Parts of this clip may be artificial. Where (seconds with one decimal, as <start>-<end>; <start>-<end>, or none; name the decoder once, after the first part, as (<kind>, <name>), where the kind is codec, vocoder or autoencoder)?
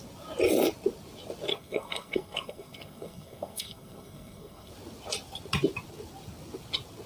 1.5-4.7 (codec, SNAC)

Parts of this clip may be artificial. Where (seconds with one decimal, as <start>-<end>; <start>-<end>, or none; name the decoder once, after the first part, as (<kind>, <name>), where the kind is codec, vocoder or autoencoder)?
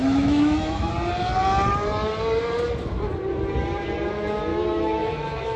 0.0-0.9 (autoencoder, DAC-VAE); 4.5-5.6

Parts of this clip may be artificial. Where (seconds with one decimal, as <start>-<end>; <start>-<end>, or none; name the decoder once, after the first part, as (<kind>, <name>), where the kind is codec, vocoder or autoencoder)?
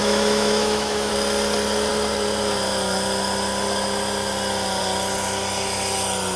0.0-1.1 (autoencoder, DAC-VAE)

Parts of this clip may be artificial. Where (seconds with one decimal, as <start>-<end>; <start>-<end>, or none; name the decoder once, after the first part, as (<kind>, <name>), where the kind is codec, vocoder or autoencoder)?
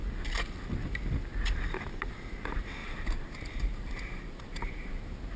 2.8-4.9 (vocoder, BigVGAN v2)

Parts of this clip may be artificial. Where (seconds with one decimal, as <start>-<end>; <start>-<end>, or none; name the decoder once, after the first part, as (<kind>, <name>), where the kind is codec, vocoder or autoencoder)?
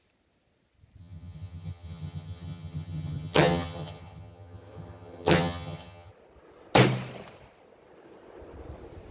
1.0-6.1 (vocoder, HiFi-GAN)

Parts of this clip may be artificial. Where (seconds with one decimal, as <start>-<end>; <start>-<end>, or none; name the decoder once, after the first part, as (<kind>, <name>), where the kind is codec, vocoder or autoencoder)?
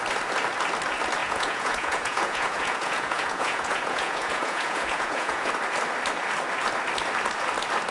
1.2-5.5 (vocoder, Vocos)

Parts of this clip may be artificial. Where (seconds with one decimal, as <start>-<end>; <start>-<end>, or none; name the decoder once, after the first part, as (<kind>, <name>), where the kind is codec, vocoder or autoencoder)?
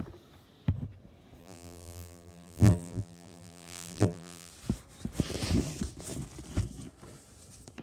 1.4-4.5 (vocoder, BigVGAN v2)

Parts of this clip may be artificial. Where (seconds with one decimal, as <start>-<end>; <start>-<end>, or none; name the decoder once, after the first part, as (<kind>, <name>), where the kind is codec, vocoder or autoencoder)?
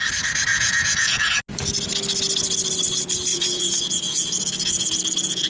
0.5-1.4 (vocoder, Vocos); 3.3-5.5